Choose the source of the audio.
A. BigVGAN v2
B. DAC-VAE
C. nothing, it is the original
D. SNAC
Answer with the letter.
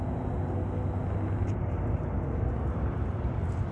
C